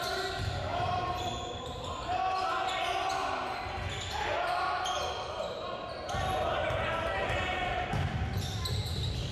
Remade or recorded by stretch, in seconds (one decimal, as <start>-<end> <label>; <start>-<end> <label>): 0.0-0.7 recorded; 0.7-2.2 remade; 2.2-9.3 recorded